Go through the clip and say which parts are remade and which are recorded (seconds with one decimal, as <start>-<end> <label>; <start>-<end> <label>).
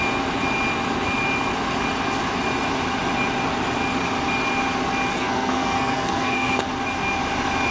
0.0-5.1 recorded; 5.1-6.7 remade; 6.7-7.7 recorded